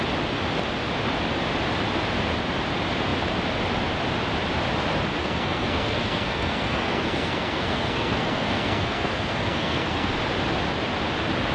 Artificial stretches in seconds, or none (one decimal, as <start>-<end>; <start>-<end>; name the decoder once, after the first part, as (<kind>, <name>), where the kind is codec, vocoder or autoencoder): 5.2-10.1 (codec, SNAC)